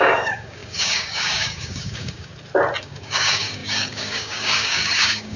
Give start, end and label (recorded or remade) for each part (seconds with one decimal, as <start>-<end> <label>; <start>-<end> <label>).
0.0-2.3 remade; 2.3-2.8 recorded; 2.8-5.4 remade